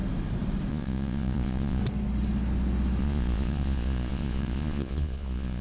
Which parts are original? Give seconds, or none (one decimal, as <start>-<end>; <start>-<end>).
0.0-0.7; 1.8-3.0